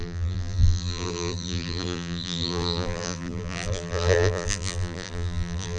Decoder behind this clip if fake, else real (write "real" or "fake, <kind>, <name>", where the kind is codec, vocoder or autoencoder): fake, vocoder, BigVGAN v2